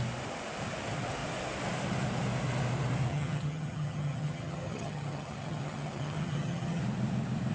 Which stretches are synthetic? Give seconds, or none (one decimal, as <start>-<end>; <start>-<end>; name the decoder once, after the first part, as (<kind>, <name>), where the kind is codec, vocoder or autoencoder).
3.1-6.8 (vocoder, HiFi-GAN)